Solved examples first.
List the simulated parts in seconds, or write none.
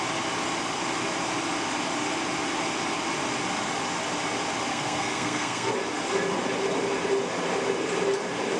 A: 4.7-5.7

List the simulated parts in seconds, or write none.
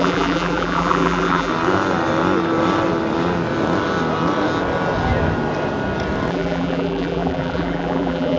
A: 0.0-1.5; 6.3-8.4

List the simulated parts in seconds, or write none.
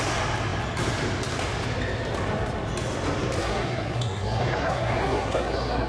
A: 3.4-5.9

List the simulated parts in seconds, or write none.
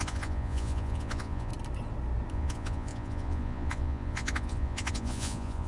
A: 0.0-1.5; 2.3-5.7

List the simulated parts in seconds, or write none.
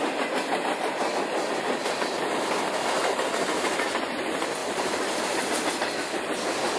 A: 4.6-5.4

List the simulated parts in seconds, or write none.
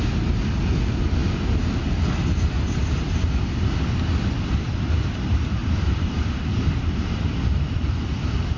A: 5.6-7.4